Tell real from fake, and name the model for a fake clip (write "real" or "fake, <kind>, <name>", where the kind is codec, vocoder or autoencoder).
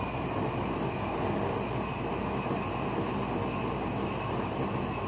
real